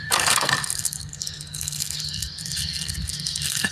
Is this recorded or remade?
remade